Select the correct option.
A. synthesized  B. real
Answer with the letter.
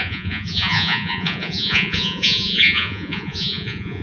A